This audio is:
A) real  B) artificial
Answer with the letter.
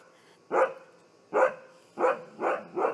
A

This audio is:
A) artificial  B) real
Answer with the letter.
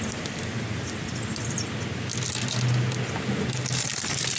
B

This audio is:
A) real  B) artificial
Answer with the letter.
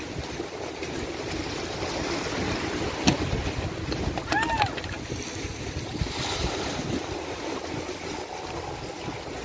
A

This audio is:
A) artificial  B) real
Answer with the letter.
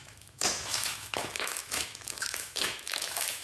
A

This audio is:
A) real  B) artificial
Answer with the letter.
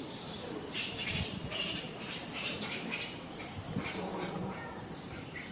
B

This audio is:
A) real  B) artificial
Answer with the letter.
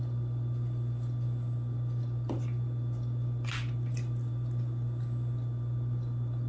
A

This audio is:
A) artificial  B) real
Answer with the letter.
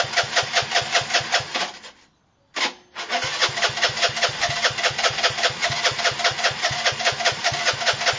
B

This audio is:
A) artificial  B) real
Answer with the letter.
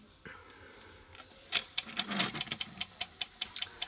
B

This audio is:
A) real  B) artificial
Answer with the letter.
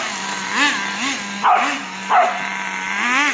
A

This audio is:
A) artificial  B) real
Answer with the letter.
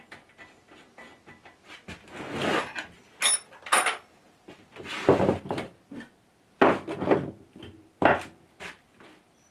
B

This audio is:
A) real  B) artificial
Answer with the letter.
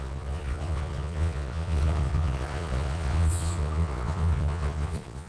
B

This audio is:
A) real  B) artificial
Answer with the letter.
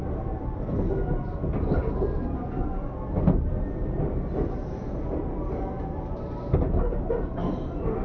A